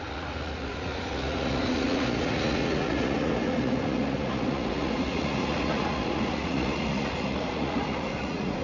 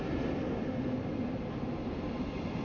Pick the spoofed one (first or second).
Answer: first